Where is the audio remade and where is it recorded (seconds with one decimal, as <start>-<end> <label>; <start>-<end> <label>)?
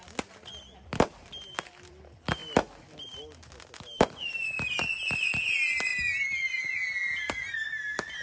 0.0-8.2 recorded